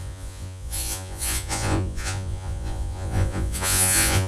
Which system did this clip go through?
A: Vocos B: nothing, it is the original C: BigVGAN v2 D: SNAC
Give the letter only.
A